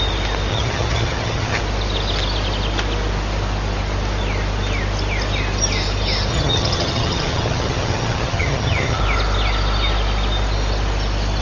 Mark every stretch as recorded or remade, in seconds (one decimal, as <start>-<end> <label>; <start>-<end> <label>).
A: 0.0-0.5 recorded; 0.5-1.6 remade; 1.6-6.3 recorded; 6.3-9.0 remade; 9.0-11.4 recorded